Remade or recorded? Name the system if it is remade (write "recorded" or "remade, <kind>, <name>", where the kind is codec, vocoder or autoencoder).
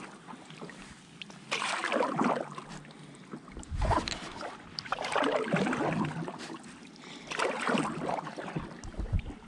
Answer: recorded